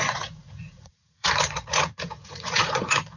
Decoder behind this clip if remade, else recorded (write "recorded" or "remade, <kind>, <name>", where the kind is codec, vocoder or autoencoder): remade, vocoder, Vocos